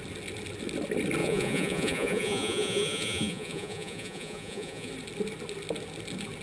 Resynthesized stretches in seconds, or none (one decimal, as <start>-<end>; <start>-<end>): 1.2-4.9